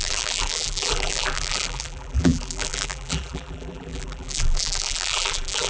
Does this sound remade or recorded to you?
remade